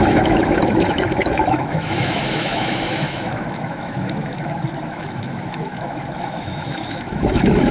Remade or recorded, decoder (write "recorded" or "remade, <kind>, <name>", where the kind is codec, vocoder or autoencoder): remade, autoencoder, DAC-VAE